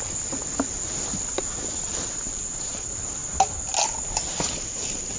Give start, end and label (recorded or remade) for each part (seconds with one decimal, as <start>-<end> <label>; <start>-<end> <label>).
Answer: 0.0-5.2 recorded